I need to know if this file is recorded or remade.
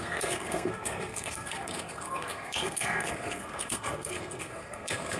remade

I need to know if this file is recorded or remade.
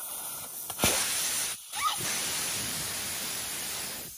recorded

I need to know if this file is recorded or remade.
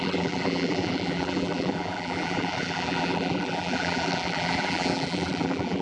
remade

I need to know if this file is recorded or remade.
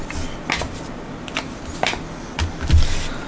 recorded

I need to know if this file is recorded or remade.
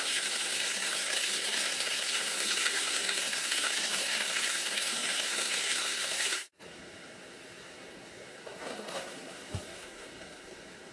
remade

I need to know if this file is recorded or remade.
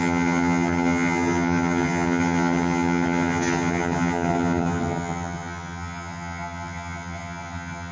remade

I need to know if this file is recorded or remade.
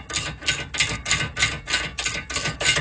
recorded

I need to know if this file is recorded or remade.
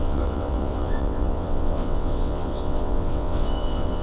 remade